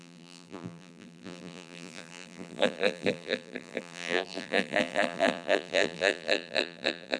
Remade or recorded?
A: remade